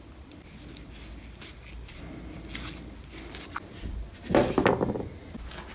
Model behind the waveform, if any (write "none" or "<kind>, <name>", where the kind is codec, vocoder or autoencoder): none